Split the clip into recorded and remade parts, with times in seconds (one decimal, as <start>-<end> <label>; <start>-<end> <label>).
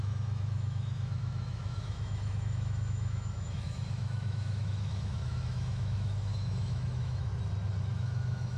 0.0-7.3 remade; 7.3-7.8 recorded; 7.8-8.6 remade